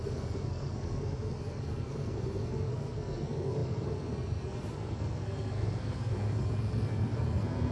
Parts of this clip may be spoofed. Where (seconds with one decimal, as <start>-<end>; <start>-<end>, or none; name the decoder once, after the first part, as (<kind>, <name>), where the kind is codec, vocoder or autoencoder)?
0.0-7.7 (codec, SNAC)